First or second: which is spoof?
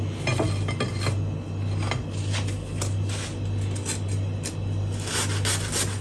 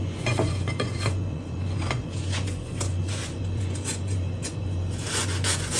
second